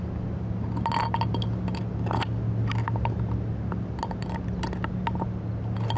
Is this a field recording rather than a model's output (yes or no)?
yes